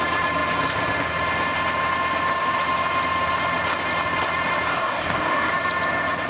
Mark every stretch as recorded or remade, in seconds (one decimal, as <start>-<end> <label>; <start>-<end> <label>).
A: 0.0-4.7 recorded; 4.7-5.5 remade; 5.5-6.3 recorded